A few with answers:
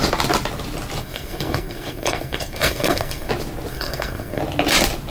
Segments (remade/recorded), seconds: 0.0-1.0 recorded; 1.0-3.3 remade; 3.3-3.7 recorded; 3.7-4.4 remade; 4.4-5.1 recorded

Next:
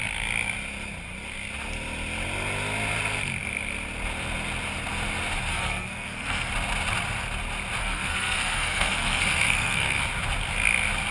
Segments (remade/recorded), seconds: 0.0-5.5 recorded; 5.5-6.5 remade; 6.5-7.8 recorded; 7.8-10.0 remade; 10.0-11.1 recorded

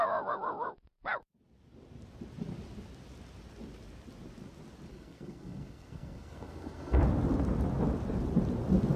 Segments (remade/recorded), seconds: 0.0-4.9 recorded; 4.9-7.0 remade; 7.0-9.0 recorded

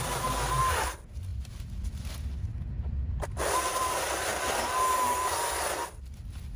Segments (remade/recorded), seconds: 0.0-6.6 recorded

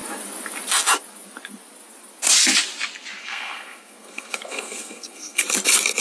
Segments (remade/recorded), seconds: 0.0-3.2 recorded; 3.2-5.4 remade; 5.4-6.0 recorded